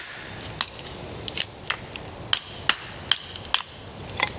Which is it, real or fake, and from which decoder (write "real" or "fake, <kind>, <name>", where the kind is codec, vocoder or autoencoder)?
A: real